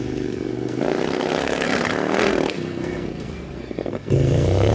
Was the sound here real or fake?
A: fake